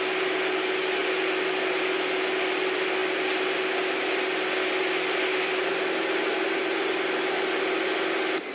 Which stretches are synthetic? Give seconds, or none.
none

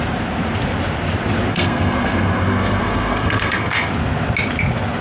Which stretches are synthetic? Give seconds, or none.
1.5-3.9 (codec, SNAC)

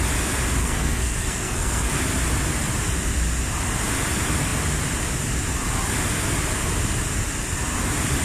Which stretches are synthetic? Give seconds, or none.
0.6-1.9 (codec, SNAC)

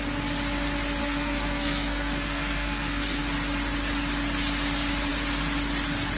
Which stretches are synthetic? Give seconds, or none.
1.0-3.2 (codec, SNAC)

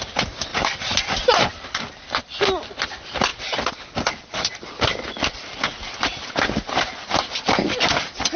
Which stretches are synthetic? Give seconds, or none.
none

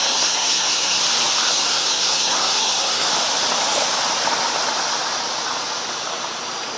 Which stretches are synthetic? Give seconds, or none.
0.0-1.0 (codec, SNAC); 1.5-3.1

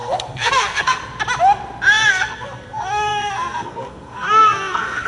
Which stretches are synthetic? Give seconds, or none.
0.0-1.0 (codec, SNAC); 2.1-5.1

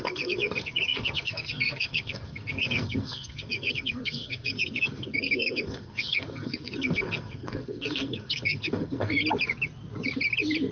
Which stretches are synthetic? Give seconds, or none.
0.0-9.2 (codec, SNAC)